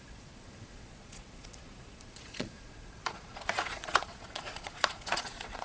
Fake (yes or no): yes